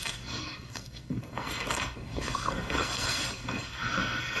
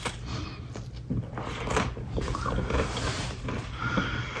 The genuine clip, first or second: second